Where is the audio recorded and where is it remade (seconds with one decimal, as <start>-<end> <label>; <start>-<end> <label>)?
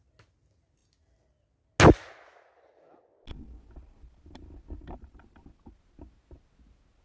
0.0-7.0 recorded